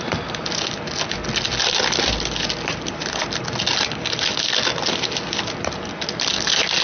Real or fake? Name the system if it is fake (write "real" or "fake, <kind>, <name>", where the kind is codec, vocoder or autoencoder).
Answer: real